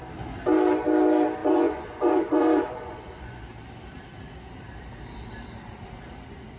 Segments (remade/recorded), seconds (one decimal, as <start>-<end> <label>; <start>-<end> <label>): 0.0-1.4 recorded; 1.4-3.4 remade; 3.4-6.6 recorded